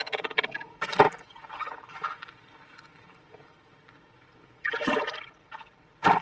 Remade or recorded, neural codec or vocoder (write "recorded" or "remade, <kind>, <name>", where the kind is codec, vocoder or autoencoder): recorded